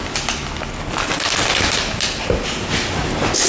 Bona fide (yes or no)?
yes